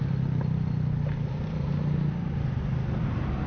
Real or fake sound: real